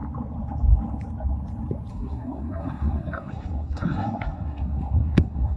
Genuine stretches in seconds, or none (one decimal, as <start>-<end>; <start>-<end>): 0.0-1.9